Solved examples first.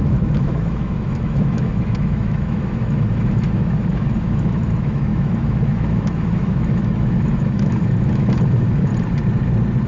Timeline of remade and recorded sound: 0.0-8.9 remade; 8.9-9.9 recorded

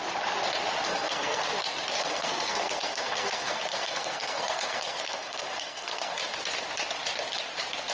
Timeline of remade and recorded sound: 0.0-0.9 recorded; 0.9-1.4 remade; 1.4-2.0 recorded; 2.0-6.2 remade; 6.2-7.9 recorded

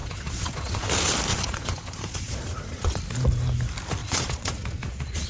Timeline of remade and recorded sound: 0.0-0.9 remade; 0.9-1.3 recorded; 1.3-3.0 remade; 3.0-4.0 recorded; 4.0-5.3 remade

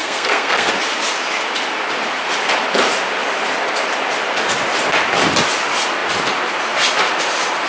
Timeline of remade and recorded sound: 0.0-0.7 remade; 0.7-7.7 recorded

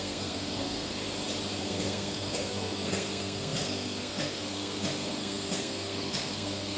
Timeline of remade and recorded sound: 0.0-1.0 remade; 1.0-1.6 recorded; 1.6-6.8 remade

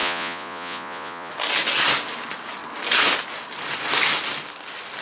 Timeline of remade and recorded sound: 0.0-1.3 remade; 1.3-5.0 recorded

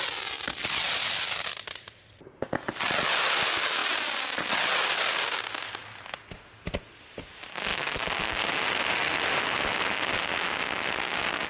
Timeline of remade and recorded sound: 0.0-11.5 recorded